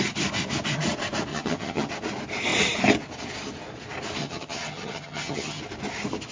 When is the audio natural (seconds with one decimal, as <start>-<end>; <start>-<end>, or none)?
0.0-1.3; 1.9-4.2; 5.6-6.3